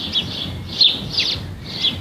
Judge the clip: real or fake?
real